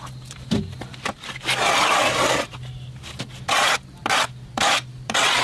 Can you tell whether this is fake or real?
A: fake